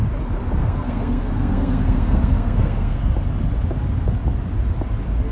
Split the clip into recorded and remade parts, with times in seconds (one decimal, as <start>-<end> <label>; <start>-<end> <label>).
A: 0.0-0.6 recorded; 0.6-3.0 remade; 3.0-5.3 recorded